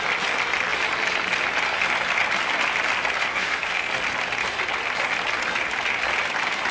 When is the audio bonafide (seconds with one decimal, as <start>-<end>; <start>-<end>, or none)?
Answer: 0.0-3.3; 3.9-6.7